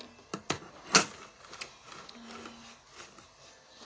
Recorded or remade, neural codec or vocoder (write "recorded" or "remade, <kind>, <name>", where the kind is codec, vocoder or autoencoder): recorded